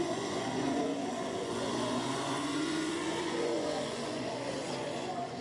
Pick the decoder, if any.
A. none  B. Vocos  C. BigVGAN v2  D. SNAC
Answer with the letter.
B